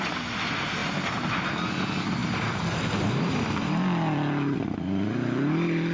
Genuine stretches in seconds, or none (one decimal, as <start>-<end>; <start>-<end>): 0.0-5.9

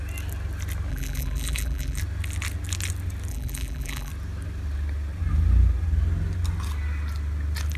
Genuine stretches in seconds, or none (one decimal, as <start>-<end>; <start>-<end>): 0.0-0.9; 2.0-3.3; 4.1-7.8

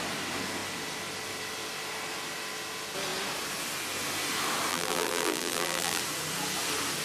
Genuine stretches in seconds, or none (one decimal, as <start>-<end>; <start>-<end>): 0.0-4.7; 6.0-7.0

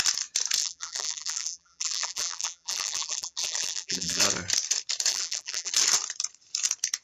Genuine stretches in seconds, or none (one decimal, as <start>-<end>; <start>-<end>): 0.0-0.6; 4.2-5.1; 5.7-7.0

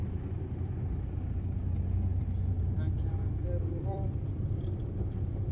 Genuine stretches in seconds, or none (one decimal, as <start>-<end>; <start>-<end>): 0.0-3.4; 4.6-5.5

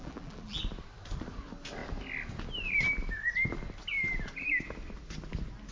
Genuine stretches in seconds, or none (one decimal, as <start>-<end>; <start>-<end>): 0.6-5.7

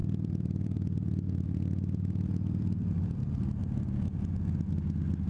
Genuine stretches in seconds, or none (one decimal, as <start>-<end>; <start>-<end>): 3.6-5.3

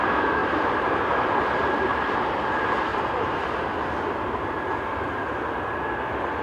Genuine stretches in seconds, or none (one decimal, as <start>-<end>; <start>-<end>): 0.0-0.4; 0.9-6.4